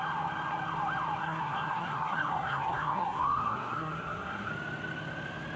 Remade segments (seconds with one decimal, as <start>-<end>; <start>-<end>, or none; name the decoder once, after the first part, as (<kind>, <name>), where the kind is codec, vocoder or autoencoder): 1.2-4.5 (codec, SNAC)